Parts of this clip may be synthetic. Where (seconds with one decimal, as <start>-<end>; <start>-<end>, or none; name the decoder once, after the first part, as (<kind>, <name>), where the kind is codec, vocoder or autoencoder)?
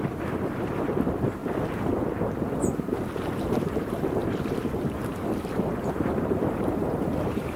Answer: 0.0-1.4 (vocoder, BigVGAN v2); 3.1-7.6